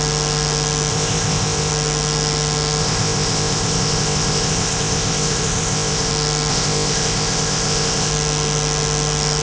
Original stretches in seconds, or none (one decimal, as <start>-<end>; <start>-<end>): 0.0-0.9; 1.7-2.8; 6.1-6.5; 8.1-9.4